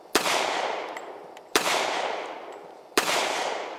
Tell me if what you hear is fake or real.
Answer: fake